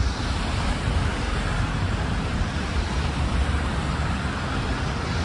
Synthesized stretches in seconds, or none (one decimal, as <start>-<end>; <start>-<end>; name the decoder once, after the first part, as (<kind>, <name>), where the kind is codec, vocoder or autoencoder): 1.1-4.2 (vocoder, BigVGAN v2)